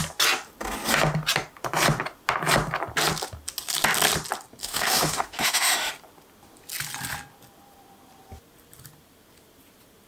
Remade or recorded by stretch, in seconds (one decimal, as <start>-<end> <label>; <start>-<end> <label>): 0.0-4.6 recorded; 4.6-5.9 remade; 5.9-10.1 recorded